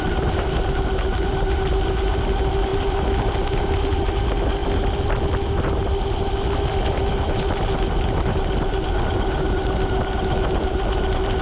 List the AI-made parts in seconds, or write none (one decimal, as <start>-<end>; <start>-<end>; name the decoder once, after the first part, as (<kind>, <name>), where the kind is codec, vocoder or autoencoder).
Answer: none